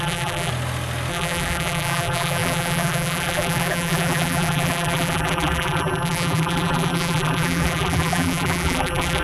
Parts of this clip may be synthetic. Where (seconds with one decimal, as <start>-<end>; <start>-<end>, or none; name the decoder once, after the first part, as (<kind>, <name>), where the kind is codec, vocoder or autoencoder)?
0.0-0.5 (vocoder, BigVGAN v2); 1.1-9.2

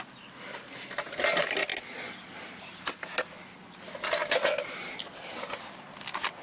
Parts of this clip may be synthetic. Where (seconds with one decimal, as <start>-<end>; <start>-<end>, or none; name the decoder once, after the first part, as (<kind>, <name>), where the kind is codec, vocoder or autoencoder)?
none

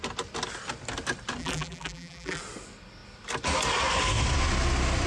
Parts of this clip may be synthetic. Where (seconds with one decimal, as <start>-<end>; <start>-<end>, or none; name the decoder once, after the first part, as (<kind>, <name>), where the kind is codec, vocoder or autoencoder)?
1.4-2.4 (vocoder, BigVGAN v2)

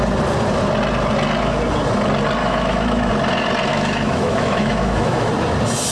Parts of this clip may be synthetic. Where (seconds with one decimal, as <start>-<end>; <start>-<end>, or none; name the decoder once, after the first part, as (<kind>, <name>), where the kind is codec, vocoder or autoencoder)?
2.4-3.1 (autoencoder, DAC-VAE); 3.7-5.3

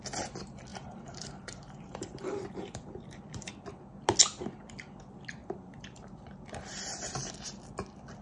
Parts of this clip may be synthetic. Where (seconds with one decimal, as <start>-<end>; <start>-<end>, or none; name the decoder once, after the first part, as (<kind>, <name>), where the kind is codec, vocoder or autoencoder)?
0.7-3.5 (vocoder, BigVGAN v2); 5.4-7.3

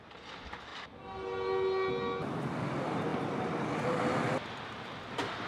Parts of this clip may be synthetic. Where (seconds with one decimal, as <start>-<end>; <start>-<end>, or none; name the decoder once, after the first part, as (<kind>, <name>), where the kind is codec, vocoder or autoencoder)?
3.1-5.5 (vocoder, BigVGAN v2)

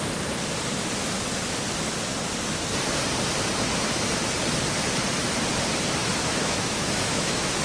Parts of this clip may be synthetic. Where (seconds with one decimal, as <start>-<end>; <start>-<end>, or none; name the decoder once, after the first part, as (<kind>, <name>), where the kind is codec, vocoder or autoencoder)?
6.0-7.6 (autoencoder, DAC-VAE)